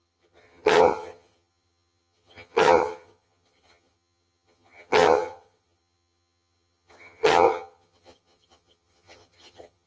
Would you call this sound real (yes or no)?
no